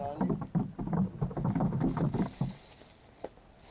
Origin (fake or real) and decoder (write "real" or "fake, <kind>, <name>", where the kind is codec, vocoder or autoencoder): real